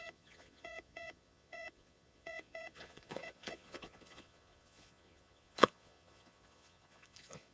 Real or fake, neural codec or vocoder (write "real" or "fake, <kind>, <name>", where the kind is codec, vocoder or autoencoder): fake, vocoder, Vocos